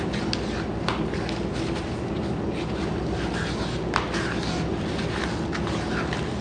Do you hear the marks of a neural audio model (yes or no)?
no